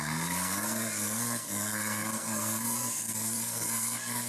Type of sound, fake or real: fake